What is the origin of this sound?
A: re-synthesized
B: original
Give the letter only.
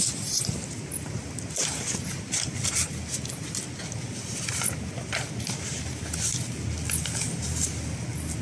B